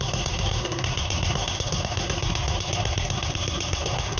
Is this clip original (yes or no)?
no